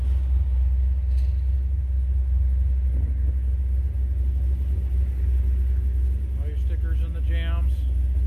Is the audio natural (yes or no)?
yes